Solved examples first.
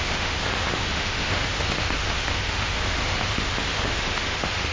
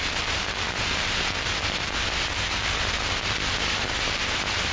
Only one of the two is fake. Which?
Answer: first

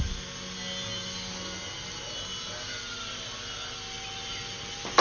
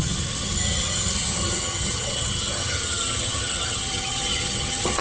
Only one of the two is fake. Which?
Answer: second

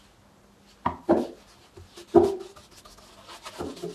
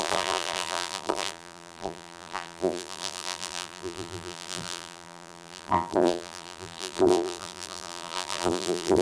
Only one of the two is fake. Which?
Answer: second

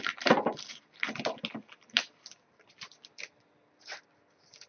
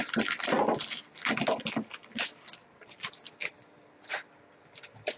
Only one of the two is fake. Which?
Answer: first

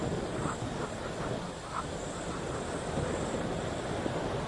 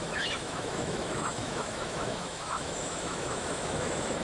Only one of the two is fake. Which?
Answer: second